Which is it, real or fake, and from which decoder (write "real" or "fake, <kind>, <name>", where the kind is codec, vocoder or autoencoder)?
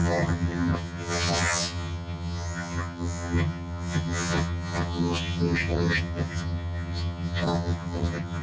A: fake, vocoder, HiFi-GAN